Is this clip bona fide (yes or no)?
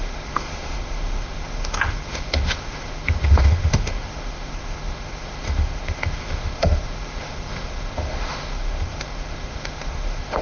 no